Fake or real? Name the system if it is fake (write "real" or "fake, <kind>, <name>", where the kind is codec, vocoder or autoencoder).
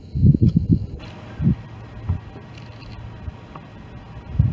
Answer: real